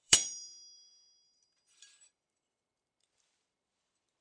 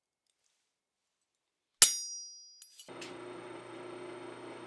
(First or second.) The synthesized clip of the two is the first